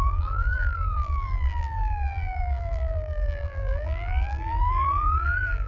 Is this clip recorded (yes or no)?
no